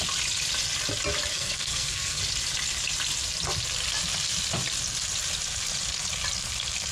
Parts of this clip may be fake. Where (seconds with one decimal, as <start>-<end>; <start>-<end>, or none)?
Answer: 1.3-2.2